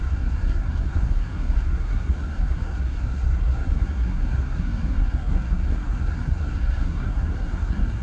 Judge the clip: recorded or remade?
remade